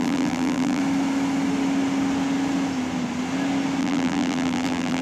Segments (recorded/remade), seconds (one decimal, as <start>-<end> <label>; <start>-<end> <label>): 0.0-0.8 remade; 0.8-3.8 recorded; 3.8-5.0 remade